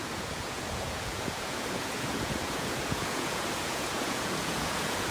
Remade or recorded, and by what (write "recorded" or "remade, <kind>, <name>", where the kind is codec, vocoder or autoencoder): remade, vocoder, Vocos